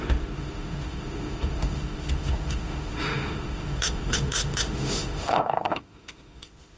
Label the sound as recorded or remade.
remade